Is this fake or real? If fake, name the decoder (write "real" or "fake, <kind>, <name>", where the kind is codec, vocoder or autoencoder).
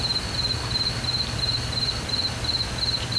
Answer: real